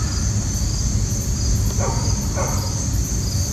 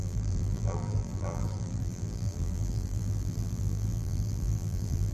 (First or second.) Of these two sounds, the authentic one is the first